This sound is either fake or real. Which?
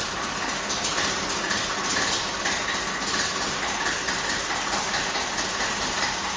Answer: real